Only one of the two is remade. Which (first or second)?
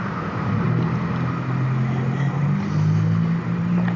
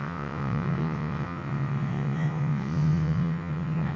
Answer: second